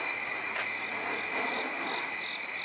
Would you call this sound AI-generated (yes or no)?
no